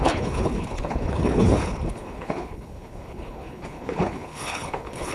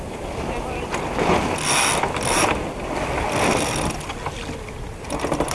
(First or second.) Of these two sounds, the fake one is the first